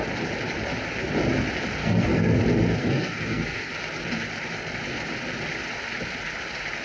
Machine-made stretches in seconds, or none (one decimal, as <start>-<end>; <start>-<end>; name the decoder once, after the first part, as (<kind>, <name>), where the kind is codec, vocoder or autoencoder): 1.8-2.4 (codec, SNAC); 2.8-3.7